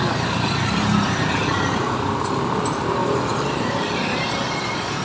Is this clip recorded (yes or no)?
yes